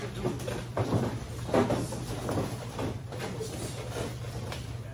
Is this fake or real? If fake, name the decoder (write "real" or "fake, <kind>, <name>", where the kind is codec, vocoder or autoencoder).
fake, vocoder, BigVGAN v2